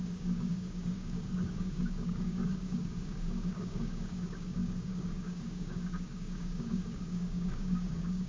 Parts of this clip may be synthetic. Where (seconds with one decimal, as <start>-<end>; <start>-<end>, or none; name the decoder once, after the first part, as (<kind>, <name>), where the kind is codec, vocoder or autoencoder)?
0.0-8.3 (codec, DAC)